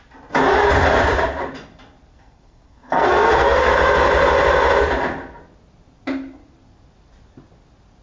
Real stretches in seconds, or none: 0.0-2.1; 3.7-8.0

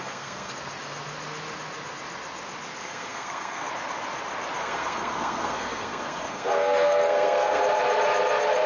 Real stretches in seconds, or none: 0.5-2.8; 3.7-4.6; 7.6-8.7

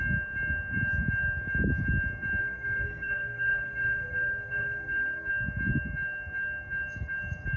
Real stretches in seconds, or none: 0.0-2.4; 5.3-7.6

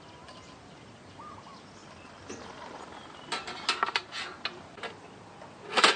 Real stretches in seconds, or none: 0.0-6.0

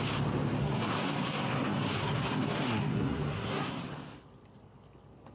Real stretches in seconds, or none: 0.0-0.6; 3.8-5.3